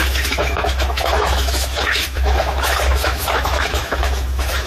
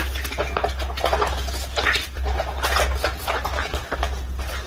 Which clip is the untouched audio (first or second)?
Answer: second